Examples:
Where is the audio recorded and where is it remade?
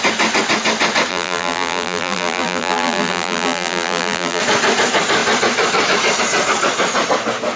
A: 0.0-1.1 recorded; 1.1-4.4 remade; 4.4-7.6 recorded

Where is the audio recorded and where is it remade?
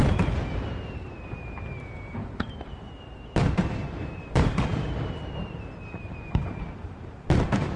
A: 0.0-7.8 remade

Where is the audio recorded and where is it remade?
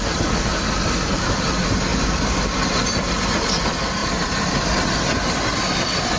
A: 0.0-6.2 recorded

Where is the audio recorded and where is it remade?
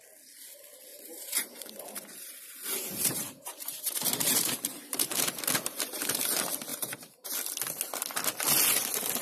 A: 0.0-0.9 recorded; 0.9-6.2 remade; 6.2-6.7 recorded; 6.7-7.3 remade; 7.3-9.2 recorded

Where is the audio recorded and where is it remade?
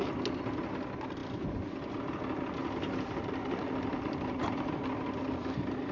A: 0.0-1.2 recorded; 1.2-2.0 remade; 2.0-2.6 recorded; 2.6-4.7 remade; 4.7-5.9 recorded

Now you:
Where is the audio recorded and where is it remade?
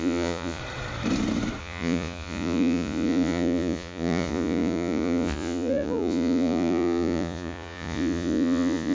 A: 0.0-0.6 remade; 0.6-1.6 recorded; 1.6-8.9 remade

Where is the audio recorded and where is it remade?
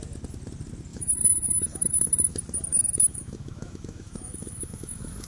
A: 0.0-0.9 recorded; 0.9-2.3 remade; 2.3-2.7 recorded; 2.7-5.3 remade